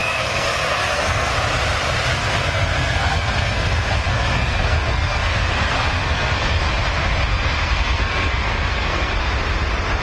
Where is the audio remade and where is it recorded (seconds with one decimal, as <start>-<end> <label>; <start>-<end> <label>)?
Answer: 0.0-1.3 remade; 1.3-2.1 recorded; 2.1-6.7 remade; 6.7-7.3 recorded; 7.3-9.1 remade; 9.1-10.0 recorded